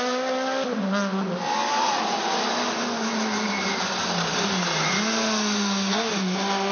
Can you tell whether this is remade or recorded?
recorded